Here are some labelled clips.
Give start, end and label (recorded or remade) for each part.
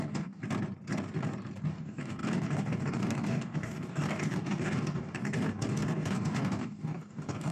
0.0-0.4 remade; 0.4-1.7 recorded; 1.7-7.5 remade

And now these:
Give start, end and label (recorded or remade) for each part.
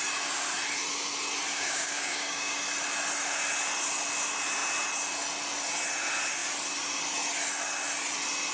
0.0-1.5 recorded; 1.5-2.6 remade; 2.6-8.5 recorded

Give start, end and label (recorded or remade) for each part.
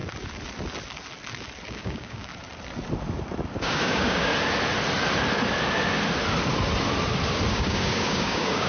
0.0-1.7 recorded; 1.7-2.3 remade; 2.3-3.5 recorded; 3.5-4.3 remade; 4.3-7.5 recorded; 7.5-8.7 remade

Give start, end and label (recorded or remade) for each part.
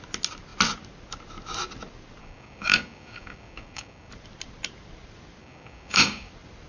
0.0-2.2 recorded; 2.2-4.1 remade; 4.1-5.4 recorded; 5.4-6.3 remade; 6.3-6.7 recorded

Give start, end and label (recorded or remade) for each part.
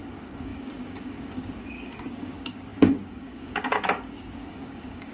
0.0-5.1 remade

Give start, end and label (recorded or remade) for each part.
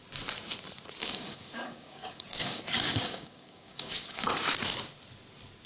0.0-1.0 recorded; 1.0-4.3 remade; 4.3-5.7 recorded